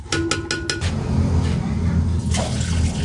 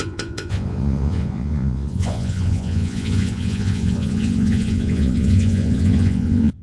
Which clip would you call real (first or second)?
first